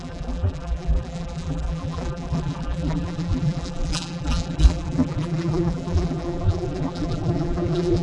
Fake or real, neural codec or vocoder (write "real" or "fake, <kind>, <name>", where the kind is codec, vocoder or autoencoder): fake, vocoder, BigVGAN v2